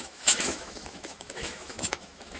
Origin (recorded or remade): remade